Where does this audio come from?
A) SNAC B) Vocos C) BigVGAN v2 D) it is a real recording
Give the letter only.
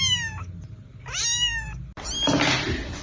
D